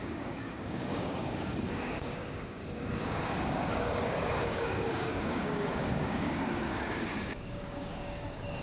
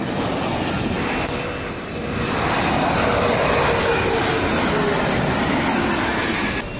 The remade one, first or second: first